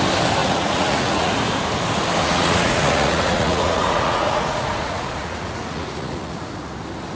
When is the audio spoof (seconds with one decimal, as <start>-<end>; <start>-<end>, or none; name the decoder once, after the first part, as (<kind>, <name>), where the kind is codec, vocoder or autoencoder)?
0.4-1.3 (vocoder, Vocos); 2.2-6.5